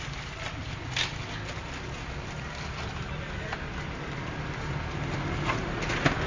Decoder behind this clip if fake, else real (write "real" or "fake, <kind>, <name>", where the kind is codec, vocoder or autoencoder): real